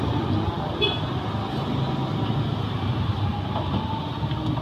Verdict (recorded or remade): recorded